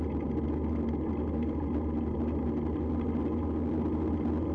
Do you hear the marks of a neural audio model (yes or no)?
no